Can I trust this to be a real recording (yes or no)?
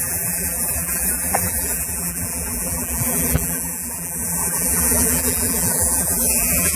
no